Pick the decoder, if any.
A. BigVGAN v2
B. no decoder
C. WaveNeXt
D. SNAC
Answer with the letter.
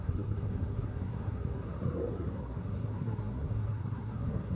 D